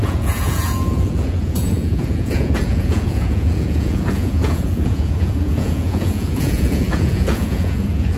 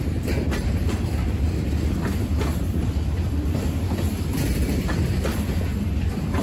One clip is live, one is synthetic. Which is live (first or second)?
second